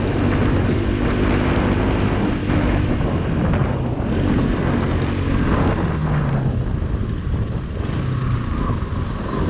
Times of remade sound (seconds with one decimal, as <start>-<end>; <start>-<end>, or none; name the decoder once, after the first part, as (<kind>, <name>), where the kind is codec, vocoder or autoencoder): 2.4-2.9 (autoencoder, DAC-VAE)